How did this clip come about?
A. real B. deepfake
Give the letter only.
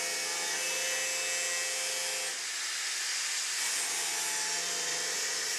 A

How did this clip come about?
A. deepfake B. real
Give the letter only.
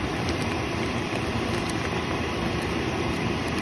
A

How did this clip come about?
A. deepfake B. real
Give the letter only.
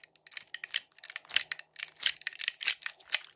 B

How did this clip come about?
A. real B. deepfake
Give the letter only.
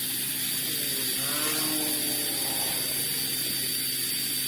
A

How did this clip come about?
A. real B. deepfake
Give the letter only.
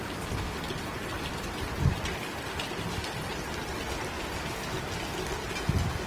A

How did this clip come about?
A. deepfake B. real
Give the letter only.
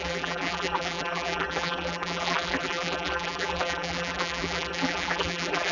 A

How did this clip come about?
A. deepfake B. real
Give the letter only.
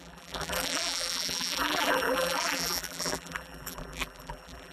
A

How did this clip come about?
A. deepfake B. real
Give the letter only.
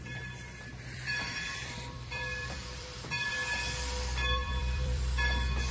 A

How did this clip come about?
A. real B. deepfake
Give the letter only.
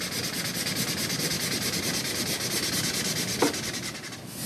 A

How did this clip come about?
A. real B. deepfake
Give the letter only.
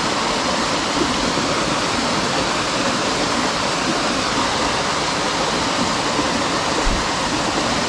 A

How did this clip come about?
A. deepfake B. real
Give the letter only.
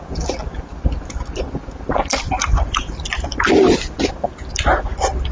B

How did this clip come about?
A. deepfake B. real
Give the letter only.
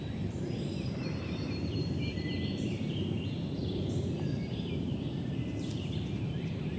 A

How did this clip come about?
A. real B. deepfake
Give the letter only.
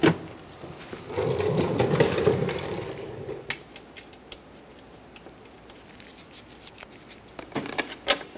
A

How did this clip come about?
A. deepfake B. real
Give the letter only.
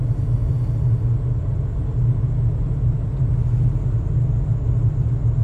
B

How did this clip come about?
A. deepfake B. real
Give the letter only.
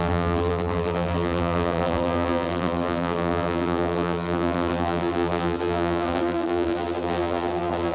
A